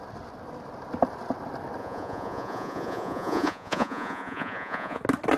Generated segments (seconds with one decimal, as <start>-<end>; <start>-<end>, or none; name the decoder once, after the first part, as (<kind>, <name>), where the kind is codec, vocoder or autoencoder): 1.8-5.0 (vocoder, Vocos)